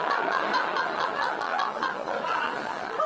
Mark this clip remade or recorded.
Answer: remade